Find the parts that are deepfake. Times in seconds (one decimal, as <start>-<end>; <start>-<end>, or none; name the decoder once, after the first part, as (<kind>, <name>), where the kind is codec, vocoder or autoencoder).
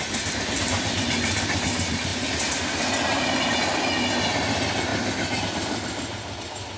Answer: none